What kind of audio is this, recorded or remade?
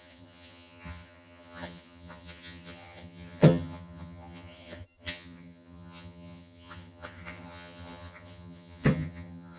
remade